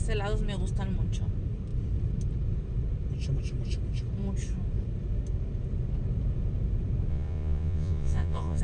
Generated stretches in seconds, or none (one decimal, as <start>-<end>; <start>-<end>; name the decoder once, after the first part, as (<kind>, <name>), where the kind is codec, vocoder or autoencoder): 7.1-8.6 (vocoder, Vocos)

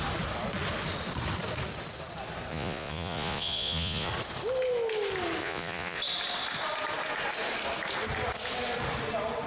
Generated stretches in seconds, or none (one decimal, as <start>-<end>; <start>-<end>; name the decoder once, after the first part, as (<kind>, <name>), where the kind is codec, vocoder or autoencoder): 2.5-4.1 (vocoder, Vocos); 5.4-6.0